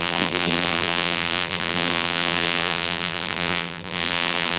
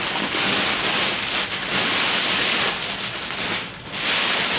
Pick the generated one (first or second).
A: first